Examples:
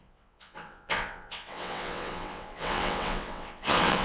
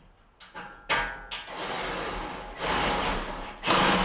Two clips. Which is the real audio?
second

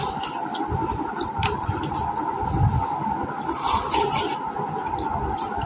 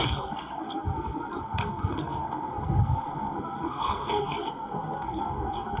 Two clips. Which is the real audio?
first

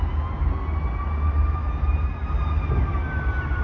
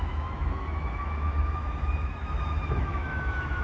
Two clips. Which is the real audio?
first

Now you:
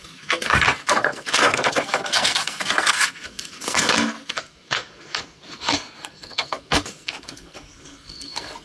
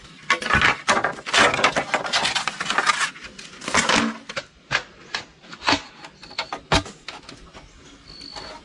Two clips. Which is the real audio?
second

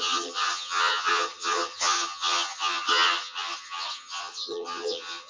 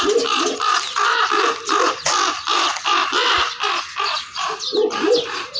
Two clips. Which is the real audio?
second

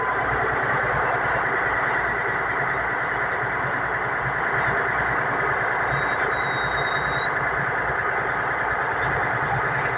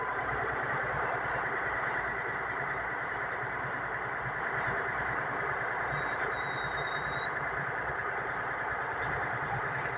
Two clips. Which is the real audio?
first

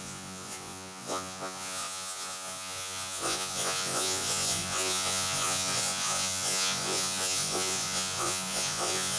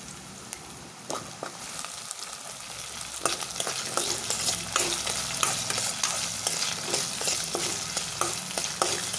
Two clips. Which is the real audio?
second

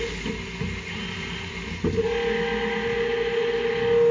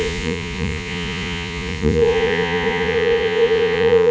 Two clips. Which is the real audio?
first